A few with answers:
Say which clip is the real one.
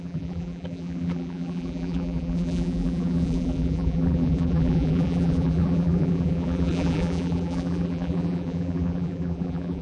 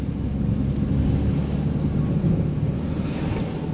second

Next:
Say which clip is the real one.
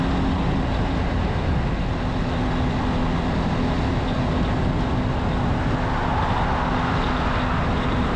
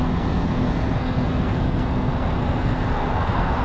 first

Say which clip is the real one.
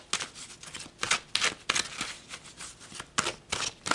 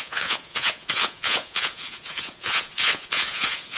first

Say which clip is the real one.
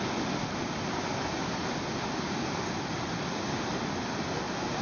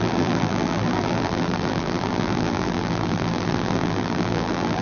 first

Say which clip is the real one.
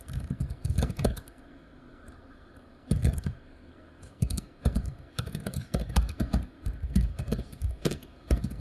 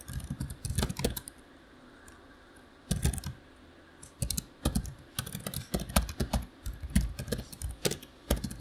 second